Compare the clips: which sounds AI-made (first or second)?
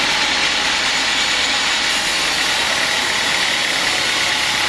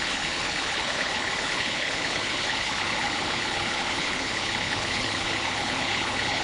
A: second